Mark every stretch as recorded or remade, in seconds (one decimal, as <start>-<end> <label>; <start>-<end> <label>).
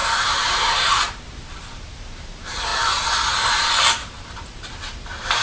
0.0-2.7 remade; 2.7-3.5 recorded; 3.5-5.4 remade